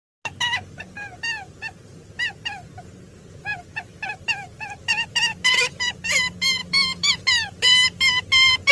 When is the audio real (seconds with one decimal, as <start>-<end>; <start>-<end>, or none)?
0.0-3.5; 5.9-6.6